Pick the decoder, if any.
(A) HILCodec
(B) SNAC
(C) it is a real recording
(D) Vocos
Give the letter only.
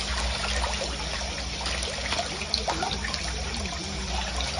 C